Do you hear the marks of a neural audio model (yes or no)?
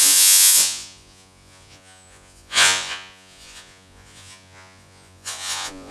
yes